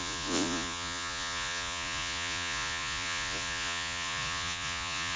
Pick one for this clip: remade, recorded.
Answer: remade